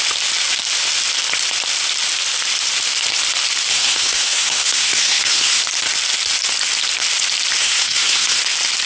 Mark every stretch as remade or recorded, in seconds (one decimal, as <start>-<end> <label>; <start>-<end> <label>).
0.0-3.7 recorded; 3.7-5.6 remade; 5.6-7.6 recorded; 7.6-8.4 remade; 8.4-8.9 recorded